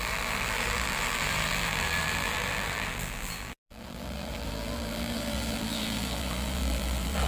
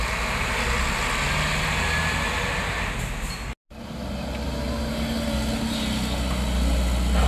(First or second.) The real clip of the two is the second